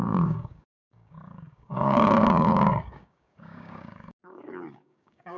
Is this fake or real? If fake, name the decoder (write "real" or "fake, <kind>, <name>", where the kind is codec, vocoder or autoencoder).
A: fake, codec, DAC